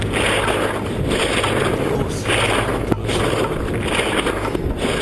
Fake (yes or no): no